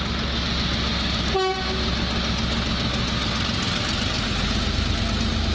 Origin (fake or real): real